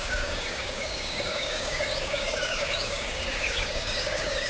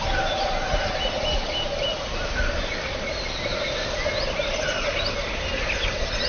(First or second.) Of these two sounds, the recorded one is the second